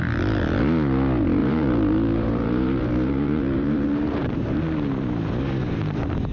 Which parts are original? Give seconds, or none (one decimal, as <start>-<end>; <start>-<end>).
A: 0.0-1.4; 4.6-6.3

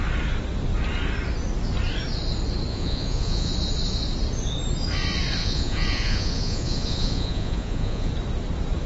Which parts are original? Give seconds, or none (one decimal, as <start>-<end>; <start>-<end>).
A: 0.0-2.7; 3.5-5.4; 8.1-8.9